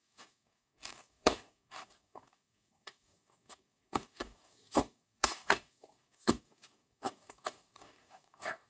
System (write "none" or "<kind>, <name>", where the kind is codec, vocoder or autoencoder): codec, DAC